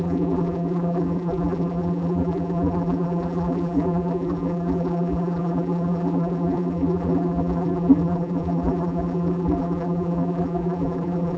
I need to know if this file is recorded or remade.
remade